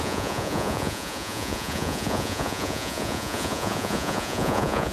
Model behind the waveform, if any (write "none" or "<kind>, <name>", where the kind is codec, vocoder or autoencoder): vocoder, Vocos